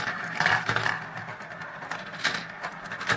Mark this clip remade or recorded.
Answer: recorded